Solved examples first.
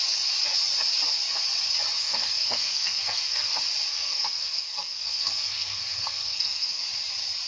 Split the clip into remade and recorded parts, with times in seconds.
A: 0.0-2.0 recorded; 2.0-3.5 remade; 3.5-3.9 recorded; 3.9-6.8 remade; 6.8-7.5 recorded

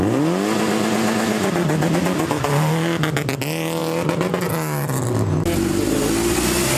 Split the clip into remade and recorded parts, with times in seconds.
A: 0.0-6.8 recorded

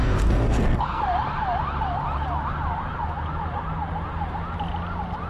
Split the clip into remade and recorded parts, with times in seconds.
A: 0.0-1.0 remade; 1.0-5.3 recorded